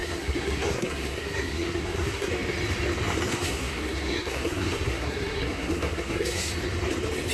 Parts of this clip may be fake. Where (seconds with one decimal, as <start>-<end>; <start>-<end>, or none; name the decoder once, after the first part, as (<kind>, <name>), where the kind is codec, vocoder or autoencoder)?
0.0-2.3 (codec, SNAC); 3.3-6.5